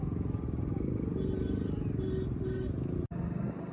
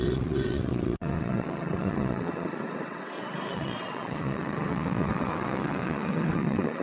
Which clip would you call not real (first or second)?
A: second